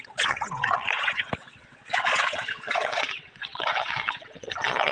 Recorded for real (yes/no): no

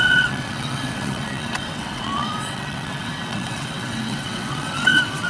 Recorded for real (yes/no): no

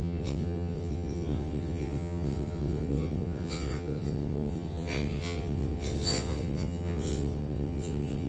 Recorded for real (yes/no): no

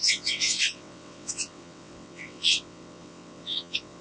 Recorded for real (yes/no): no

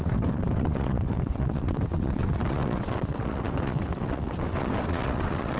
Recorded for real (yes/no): no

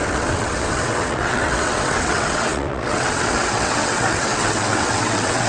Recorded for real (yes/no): no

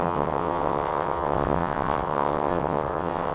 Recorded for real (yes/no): no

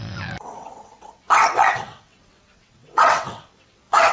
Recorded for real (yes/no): no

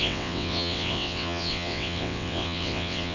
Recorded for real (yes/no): no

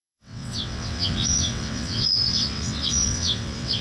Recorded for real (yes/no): no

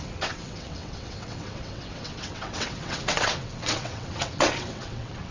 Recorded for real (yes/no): no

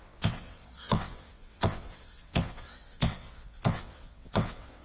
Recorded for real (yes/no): no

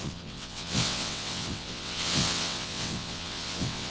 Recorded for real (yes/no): no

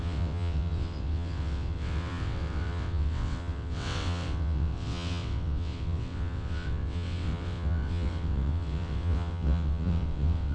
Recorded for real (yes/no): no